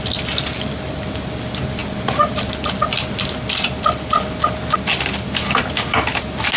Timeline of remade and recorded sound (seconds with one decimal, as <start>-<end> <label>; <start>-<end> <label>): 0.0-6.6 recorded